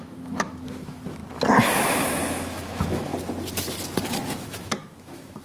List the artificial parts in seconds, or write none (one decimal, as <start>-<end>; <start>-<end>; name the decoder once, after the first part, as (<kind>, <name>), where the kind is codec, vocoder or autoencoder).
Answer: 0.0-1.2 (autoencoder, DAC-VAE); 1.8-3.1; 4.3-5.4